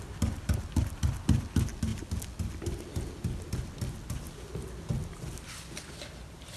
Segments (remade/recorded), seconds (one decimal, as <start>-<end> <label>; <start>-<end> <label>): 0.0-6.6 recorded